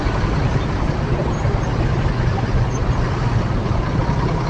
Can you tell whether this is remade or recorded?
recorded